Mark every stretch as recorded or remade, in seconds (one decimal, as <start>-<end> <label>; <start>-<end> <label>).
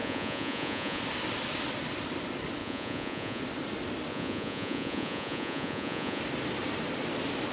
0.0-1.0 remade; 1.0-2.6 recorded; 2.6-3.4 remade; 3.4-4.1 recorded; 4.1-6.2 remade; 6.2-7.5 recorded